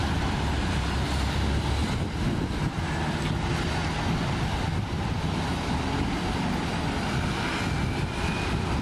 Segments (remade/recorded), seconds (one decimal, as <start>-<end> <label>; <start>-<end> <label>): 0.0-8.8 recorded